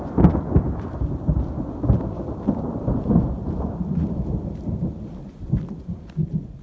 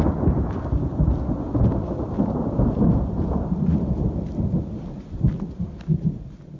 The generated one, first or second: first